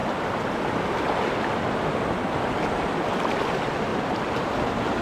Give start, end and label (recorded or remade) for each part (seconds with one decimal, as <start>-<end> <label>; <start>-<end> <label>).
0.0-3.9 recorded; 3.9-4.5 remade; 4.5-5.0 recorded